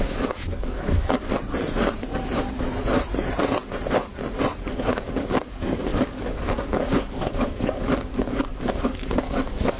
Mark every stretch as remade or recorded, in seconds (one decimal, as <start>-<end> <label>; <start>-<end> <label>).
0.0-1.3 remade; 1.3-4.8 recorded; 4.8-9.8 remade

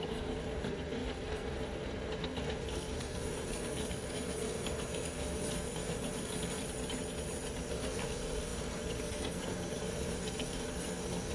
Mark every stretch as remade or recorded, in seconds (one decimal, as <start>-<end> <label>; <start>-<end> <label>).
0.0-6.6 remade; 6.6-7.7 recorded; 7.7-11.3 remade

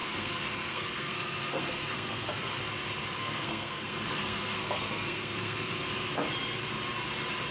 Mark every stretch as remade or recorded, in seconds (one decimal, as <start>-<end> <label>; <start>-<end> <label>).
0.0-2.6 remade; 2.6-3.2 recorded; 3.2-6.1 remade; 6.1-7.5 recorded

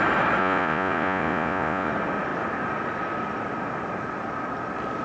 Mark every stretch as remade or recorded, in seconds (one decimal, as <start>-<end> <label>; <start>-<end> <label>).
0.0-0.4 recorded; 0.4-1.9 remade; 1.9-5.0 recorded

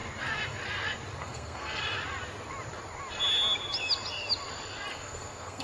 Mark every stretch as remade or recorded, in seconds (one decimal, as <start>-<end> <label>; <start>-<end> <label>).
0.0-1.2 recorded; 1.2-1.8 remade; 1.8-4.9 recorded; 4.9-5.6 remade